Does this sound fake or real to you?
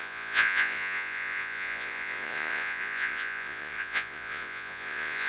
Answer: fake